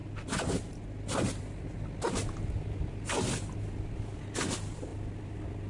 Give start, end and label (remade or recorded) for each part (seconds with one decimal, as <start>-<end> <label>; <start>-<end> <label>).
0.0-5.7 recorded